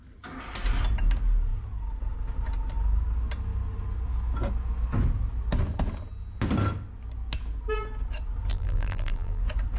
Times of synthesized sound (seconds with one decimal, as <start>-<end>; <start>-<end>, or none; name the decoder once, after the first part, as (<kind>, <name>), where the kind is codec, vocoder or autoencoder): 8.5-9.4 (vocoder, BigVGAN v2)